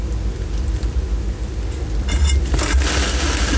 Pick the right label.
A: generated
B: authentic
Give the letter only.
B